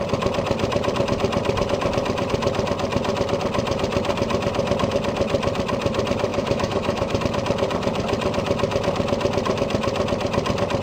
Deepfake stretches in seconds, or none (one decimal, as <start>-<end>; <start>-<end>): 6.3-7.2